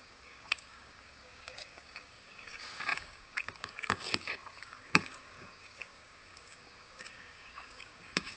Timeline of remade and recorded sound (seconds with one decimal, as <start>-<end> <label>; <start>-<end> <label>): 0.0-8.4 remade